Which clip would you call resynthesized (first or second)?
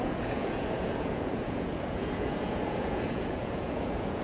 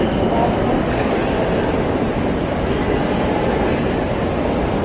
first